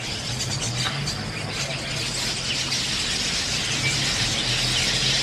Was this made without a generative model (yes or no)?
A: yes